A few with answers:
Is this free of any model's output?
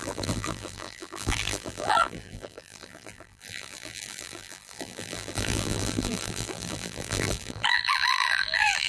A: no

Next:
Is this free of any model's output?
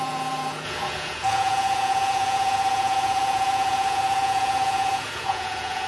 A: no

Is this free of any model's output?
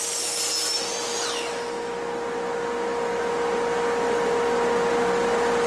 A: yes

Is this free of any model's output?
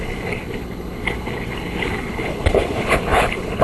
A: no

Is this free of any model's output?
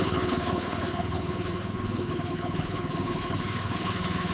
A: no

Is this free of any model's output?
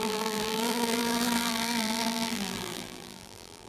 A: no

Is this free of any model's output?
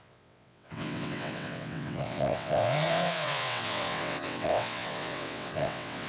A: no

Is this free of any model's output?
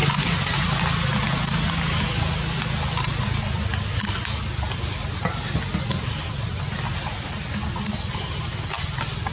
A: yes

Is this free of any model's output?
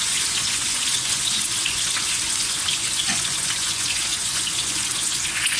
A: no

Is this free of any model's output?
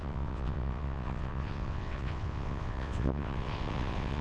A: no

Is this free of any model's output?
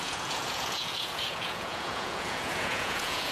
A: no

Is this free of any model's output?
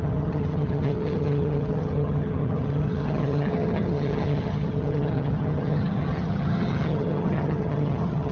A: no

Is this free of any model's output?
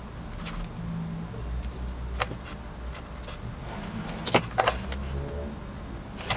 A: yes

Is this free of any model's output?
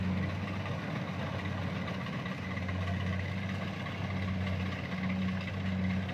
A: yes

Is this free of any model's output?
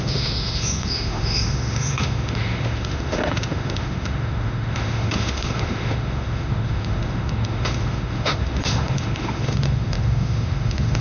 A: no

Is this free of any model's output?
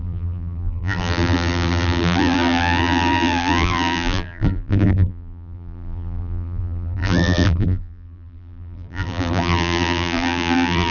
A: no